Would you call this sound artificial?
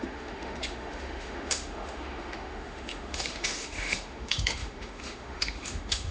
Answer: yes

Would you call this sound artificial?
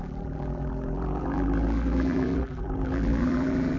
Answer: yes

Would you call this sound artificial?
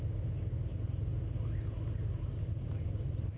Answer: no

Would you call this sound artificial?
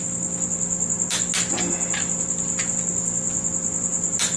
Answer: no